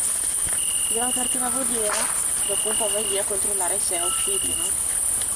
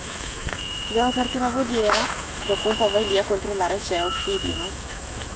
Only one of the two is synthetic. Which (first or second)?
second